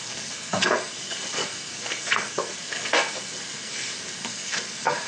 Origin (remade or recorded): remade